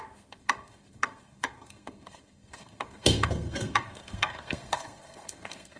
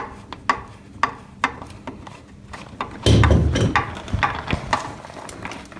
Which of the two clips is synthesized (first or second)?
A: first